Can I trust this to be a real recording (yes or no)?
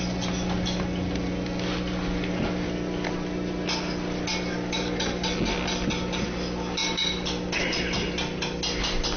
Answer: yes